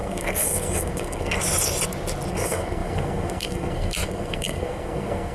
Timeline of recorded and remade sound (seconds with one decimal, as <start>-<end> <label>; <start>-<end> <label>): 0.0-1.4 remade; 1.4-2.3 recorded; 2.3-5.3 remade